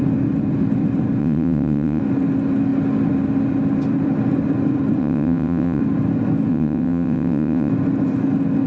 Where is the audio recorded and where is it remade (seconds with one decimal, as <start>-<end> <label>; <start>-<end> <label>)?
0.0-1.2 recorded; 1.2-2.0 remade; 2.0-5.0 recorded; 5.0-5.8 remade; 5.8-6.5 recorded; 6.5-7.7 remade; 7.7-8.7 recorded